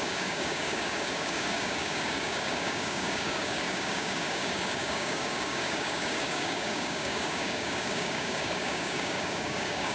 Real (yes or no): no